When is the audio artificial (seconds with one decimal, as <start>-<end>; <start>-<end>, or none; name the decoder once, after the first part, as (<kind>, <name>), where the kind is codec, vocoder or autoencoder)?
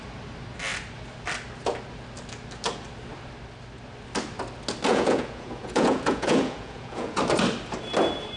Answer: 4.9-7.2 (vocoder, Vocos)